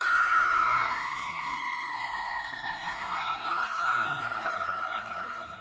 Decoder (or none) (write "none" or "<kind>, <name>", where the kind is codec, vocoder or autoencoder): codec, SNAC